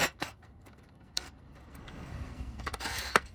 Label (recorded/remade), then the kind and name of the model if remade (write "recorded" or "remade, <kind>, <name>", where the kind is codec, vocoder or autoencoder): remade, codec, SNAC